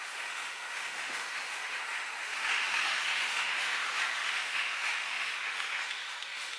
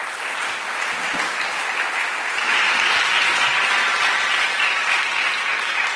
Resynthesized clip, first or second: first